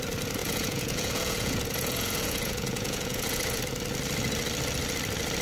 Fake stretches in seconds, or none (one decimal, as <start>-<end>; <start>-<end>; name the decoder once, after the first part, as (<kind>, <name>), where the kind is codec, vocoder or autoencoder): 0.4-3.6 (vocoder, Vocos)